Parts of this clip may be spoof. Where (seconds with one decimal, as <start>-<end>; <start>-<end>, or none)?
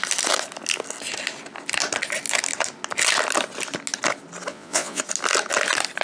4.5-5.0